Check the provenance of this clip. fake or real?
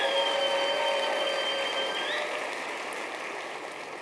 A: real